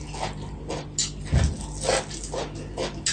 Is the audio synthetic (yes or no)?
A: no